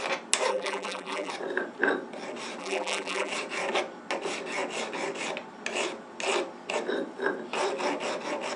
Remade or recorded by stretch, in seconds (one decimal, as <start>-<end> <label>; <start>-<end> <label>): 0.0-0.5 recorded; 0.5-1.3 remade; 1.3-2.6 recorded; 2.6-3.3 remade; 3.3-8.6 recorded